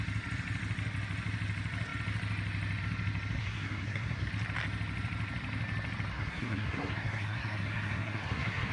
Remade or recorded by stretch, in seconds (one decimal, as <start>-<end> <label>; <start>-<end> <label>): 0.0-3.4 recorded; 3.4-4.3 remade; 4.3-6.1 recorded; 6.1-8.7 remade